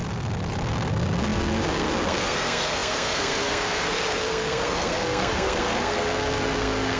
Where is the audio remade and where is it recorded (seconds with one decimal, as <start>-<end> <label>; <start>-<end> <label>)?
0.0-0.9 recorded; 0.9-7.0 remade